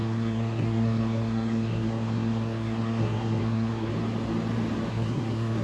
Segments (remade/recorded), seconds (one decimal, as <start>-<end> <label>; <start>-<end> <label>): 0.0-3.9 remade; 3.9-4.9 recorded; 4.9-5.6 remade